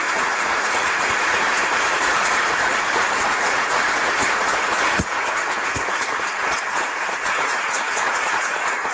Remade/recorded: remade